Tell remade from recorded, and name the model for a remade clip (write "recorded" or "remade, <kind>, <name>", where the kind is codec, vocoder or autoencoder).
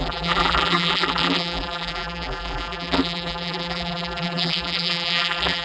remade, vocoder, BigVGAN v2